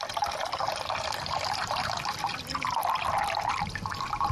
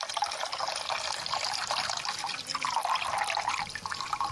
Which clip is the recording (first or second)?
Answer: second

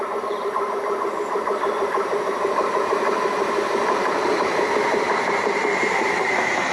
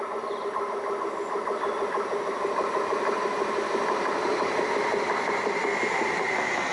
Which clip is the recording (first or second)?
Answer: second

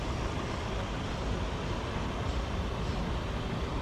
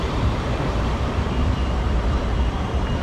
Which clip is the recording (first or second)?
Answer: first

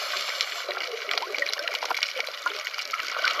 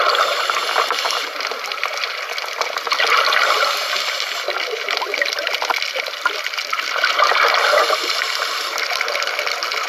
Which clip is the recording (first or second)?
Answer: second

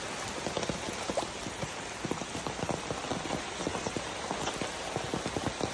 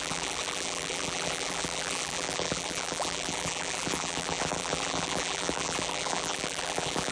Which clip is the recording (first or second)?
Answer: first